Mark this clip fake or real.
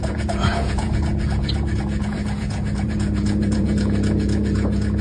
fake